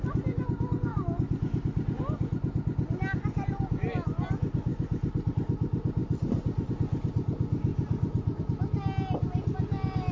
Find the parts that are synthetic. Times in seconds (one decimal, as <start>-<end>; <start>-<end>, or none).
6.0-6.7; 7.7-8.4